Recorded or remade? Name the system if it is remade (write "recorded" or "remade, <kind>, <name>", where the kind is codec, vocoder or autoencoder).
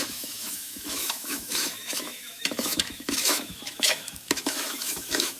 remade, autoencoder, DAC-VAE